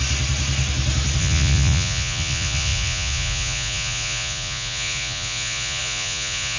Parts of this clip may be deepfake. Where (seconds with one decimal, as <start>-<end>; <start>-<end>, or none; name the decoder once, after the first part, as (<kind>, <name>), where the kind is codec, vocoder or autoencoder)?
1.2-6.6 (vocoder, Vocos)